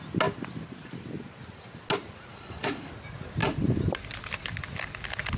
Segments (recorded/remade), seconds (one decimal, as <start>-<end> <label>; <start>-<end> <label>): 0.0-2.3 recorded; 2.3-2.9 remade; 2.9-5.4 recorded